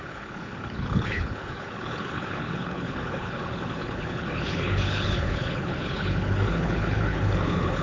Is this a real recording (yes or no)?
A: no